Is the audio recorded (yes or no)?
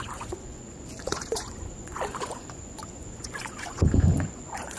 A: no